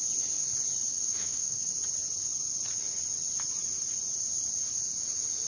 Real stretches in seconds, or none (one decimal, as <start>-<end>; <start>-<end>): 0.0-0.9; 1.7-5.5